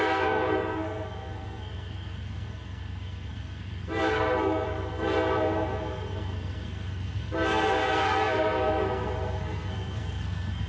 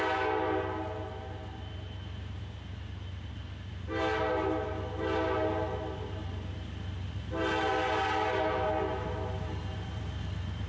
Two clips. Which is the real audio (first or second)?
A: second